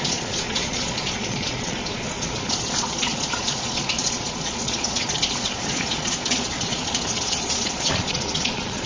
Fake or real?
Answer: fake